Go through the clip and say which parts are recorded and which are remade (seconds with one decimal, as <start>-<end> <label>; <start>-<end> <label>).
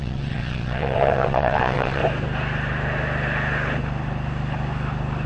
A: 0.0-2.0 remade; 2.0-5.3 recorded